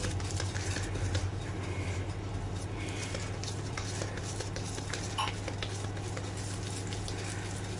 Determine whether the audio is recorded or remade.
remade